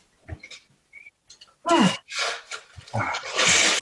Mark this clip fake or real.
real